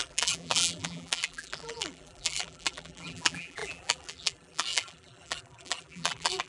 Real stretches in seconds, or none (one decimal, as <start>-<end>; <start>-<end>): none